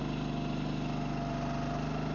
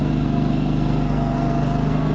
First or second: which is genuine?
first